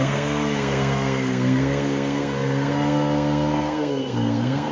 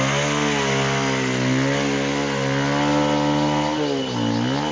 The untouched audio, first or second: second